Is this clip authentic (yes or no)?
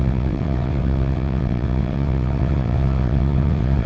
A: no